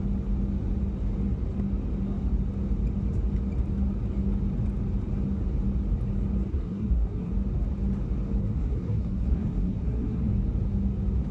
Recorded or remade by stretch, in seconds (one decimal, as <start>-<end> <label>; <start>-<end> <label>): 0.0-6.5 recorded; 6.5-7.3 remade; 7.3-8.4 recorded; 8.4-10.3 remade; 10.3-11.3 recorded